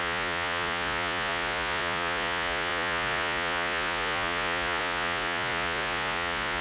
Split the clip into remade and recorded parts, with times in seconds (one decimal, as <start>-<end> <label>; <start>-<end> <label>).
0.0-6.6 remade